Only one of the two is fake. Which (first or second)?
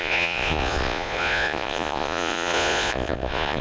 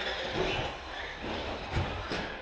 first